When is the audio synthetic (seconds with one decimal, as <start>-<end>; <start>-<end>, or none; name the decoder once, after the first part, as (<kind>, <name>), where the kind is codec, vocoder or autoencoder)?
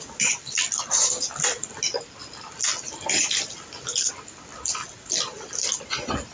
none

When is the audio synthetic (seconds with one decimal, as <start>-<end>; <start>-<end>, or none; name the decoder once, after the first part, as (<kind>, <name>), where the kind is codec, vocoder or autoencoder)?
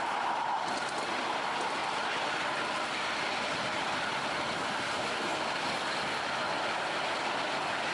none